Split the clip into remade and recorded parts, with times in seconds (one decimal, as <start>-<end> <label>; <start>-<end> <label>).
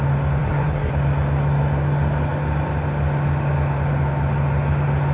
0.0-0.4 recorded; 0.4-0.9 remade; 0.9-5.1 recorded